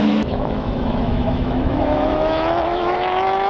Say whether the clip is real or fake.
fake